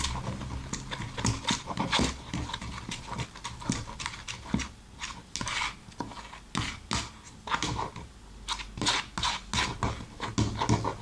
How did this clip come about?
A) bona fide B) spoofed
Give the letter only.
A